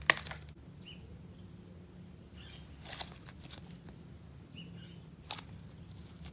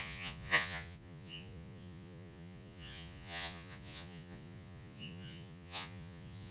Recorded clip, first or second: first